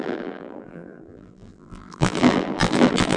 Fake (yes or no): yes